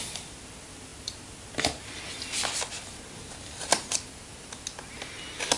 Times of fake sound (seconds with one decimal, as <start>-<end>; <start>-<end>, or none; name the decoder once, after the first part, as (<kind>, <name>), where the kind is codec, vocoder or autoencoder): none